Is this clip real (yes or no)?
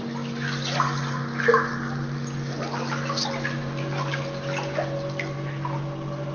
yes